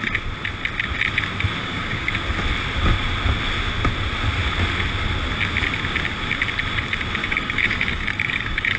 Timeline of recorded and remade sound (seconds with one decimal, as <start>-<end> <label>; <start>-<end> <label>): 0.0-1.6 recorded; 1.6-2.1 remade; 2.1-7.2 recorded; 7.2-8.8 remade